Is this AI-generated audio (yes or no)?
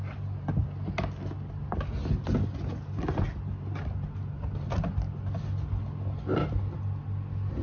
no